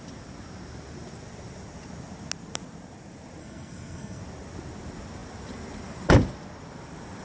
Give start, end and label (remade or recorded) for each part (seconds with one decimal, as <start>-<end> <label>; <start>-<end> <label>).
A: 0.0-3.4 recorded; 3.4-4.2 remade; 4.2-7.2 recorded